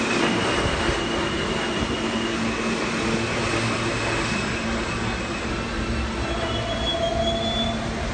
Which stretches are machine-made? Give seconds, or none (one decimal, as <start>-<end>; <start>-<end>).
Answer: none